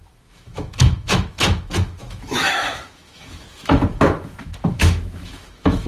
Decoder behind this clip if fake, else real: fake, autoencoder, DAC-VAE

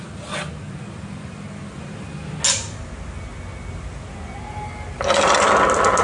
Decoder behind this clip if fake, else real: real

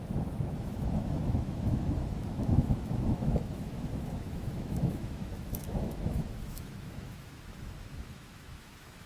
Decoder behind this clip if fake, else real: fake, autoencoder, DAC-VAE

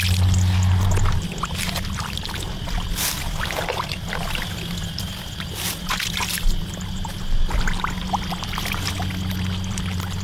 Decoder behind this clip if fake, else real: real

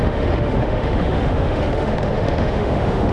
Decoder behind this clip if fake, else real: fake, autoencoder, DAC-VAE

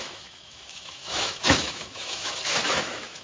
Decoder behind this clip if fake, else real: fake, autoencoder, DAC-VAE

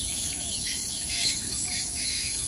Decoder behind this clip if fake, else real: fake, autoencoder, DAC-VAE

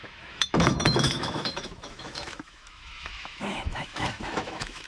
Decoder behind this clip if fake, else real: fake, autoencoder, DAC-VAE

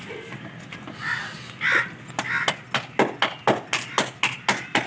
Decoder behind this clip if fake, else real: real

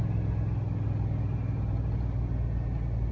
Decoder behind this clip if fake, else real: real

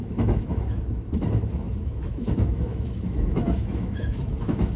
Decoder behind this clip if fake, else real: fake, autoencoder, DAC-VAE